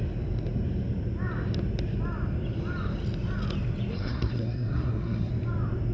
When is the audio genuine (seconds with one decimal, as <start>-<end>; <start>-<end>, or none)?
0.0-3.9; 5.3-5.9